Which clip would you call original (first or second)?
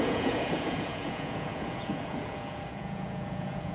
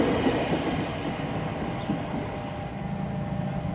second